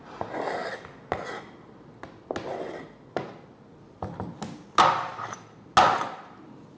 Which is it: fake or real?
real